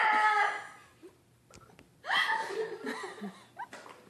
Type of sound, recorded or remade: recorded